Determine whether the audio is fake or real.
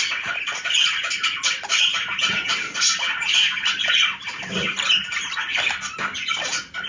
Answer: real